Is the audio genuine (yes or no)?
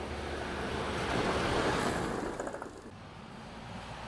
yes